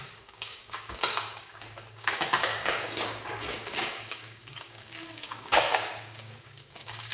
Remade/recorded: remade